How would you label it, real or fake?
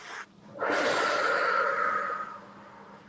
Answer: real